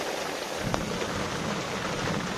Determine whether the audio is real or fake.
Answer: real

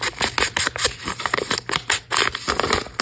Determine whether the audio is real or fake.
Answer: real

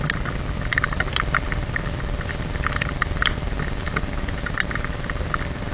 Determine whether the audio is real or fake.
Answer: real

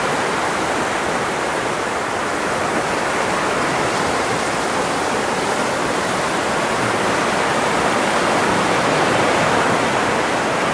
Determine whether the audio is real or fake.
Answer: fake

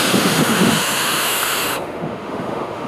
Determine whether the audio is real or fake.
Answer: fake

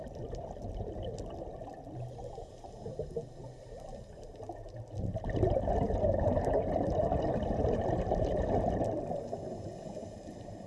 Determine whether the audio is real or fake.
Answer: real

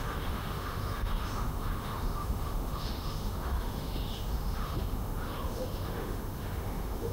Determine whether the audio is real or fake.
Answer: fake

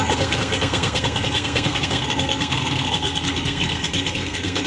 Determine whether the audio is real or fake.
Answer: fake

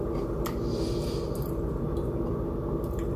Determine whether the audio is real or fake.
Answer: real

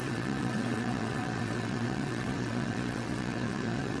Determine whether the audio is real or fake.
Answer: fake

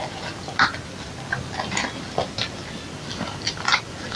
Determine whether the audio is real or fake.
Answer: real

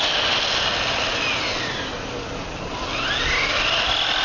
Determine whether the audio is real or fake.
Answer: real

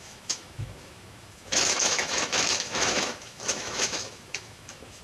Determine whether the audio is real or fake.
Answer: fake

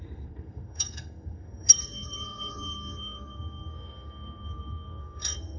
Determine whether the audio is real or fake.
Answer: fake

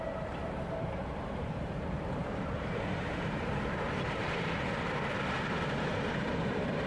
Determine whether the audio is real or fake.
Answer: fake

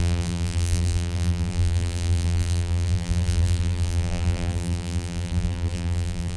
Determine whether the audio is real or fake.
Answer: fake